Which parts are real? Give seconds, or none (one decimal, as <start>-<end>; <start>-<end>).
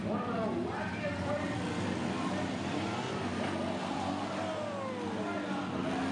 0.0-6.1